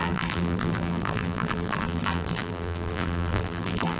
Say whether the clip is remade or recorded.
remade